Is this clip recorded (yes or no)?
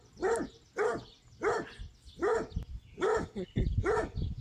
yes